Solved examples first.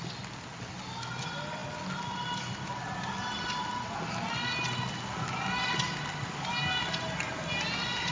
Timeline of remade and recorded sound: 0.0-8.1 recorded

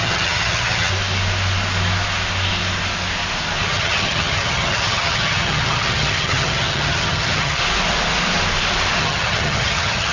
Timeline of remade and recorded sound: 0.0-0.9 remade; 0.9-3.6 recorded; 3.6-7.6 remade; 7.6-9.0 recorded; 9.0-10.1 remade

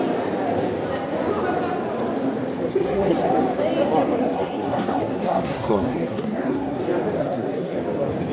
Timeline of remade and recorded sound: 0.0-2.7 recorded; 2.7-3.3 remade; 3.3-4.2 recorded; 4.2-6.8 remade; 6.8-7.2 recorded; 7.2-7.8 remade; 7.8-8.3 recorded

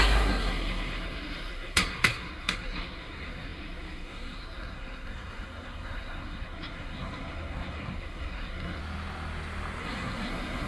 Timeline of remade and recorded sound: 0.0-8.8 remade; 8.8-9.8 recorded; 9.8-10.7 remade

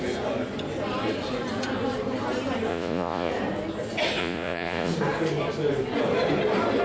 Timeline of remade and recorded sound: 0.0-2.7 recorded; 2.7-3.3 remade; 3.3-4.2 recorded; 4.2-4.9 remade; 4.9-6.8 recorded

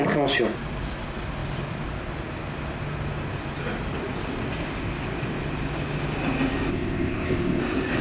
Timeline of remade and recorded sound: 0.0-6.7 recorded; 6.7-7.6 remade; 7.6-8.0 recorded